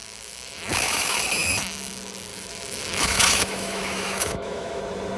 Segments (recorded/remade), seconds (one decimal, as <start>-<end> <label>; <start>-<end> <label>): 0.0-1.2 remade; 1.2-2.3 recorded; 2.3-4.8 remade; 4.8-5.2 recorded